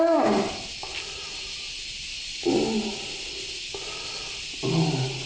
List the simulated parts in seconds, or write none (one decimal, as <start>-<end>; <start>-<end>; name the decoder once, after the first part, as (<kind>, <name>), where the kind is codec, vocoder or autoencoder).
none